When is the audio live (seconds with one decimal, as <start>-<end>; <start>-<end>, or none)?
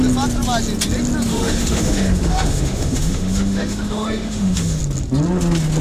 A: 0.0-1.3; 4.8-5.8